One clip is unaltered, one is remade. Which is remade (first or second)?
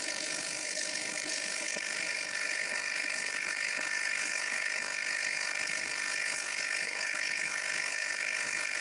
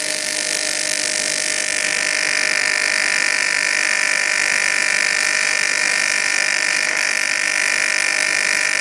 first